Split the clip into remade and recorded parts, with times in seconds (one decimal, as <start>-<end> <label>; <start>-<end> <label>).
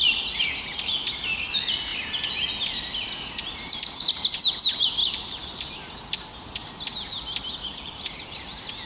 0.0-5.0 recorded; 5.0-6.0 remade; 6.0-7.7 recorded; 7.7-8.4 remade; 8.4-8.9 recorded